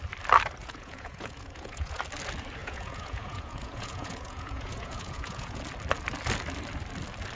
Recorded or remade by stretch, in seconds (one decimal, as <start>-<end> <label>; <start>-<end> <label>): 0.0-0.6 recorded; 0.6-2.0 remade; 2.0-2.6 recorded; 2.6-5.6 remade; 5.6-7.3 recorded